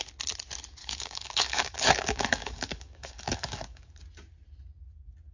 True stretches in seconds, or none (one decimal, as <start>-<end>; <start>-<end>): 0.0-0.8; 4.0-5.3